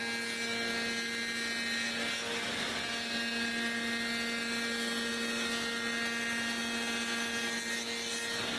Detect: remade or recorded recorded